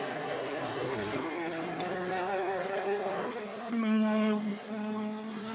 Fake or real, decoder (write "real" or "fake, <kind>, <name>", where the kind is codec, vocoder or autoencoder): fake, codec, SNAC